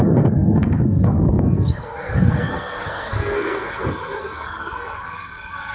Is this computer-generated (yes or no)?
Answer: yes